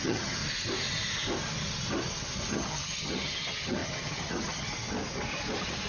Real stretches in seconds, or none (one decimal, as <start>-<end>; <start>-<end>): 0.4-2.5; 4.7-5.9